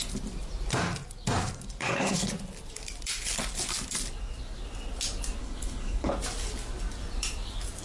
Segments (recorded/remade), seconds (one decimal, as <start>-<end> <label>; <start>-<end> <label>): 0.0-1.8 recorded; 1.8-2.3 remade; 2.3-5.4 recorded; 5.4-6.1 remade; 6.1-7.8 recorded